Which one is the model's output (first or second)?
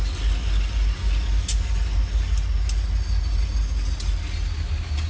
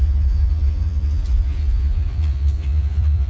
second